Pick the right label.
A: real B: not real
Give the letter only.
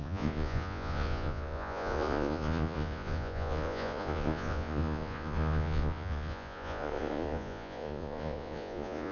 B